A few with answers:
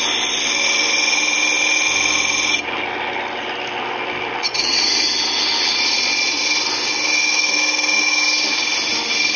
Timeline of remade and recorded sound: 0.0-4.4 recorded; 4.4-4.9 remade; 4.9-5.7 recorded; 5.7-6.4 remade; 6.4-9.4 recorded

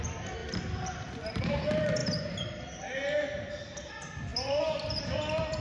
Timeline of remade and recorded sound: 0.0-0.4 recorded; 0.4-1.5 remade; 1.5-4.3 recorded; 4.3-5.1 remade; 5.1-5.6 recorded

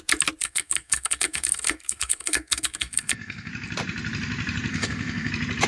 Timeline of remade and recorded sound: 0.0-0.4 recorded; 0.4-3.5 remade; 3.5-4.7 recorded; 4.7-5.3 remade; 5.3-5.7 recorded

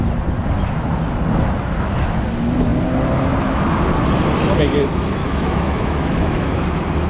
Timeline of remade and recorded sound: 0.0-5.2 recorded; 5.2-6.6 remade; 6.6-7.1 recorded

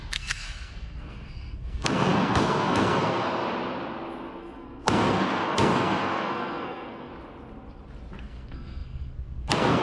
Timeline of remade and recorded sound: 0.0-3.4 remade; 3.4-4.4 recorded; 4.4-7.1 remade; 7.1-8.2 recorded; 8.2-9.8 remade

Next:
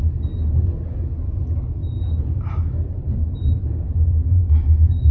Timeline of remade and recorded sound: 0.0-1.8 recorded; 1.8-5.1 remade